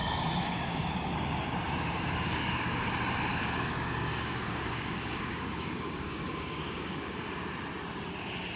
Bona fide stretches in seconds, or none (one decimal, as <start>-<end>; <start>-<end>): 2.9-3.3; 7.4-8.6